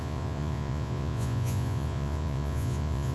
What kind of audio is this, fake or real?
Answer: fake